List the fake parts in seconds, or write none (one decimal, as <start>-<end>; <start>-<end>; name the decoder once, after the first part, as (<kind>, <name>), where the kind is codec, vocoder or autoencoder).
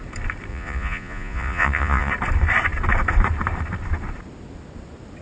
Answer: 0.5-2.1 (vocoder, Vocos)